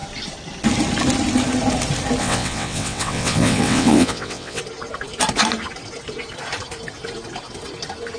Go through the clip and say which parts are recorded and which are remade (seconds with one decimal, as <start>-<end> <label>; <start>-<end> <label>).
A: 0.0-2.2 recorded; 2.2-4.6 remade; 4.6-8.2 recorded